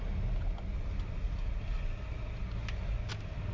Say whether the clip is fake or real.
real